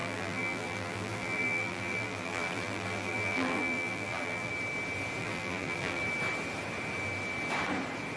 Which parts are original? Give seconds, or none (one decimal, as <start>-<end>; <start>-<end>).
4.5-5.2; 6.0-8.2